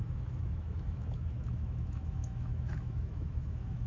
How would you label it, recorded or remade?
remade